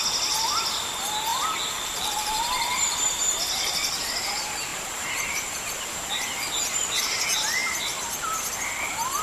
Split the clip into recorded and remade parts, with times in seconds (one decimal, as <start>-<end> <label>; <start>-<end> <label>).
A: 0.0-1.3 recorded; 1.3-4.3 remade; 4.3-4.7 recorded; 4.7-6.6 remade; 6.6-9.2 recorded